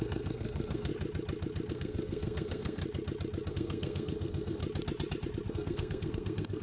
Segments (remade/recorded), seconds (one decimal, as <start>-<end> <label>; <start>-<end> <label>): 0.0-0.9 remade; 0.9-1.7 recorded; 1.7-2.8 remade; 2.8-3.5 recorded; 3.5-4.6 remade; 4.6-5.5 recorded; 5.5-6.6 remade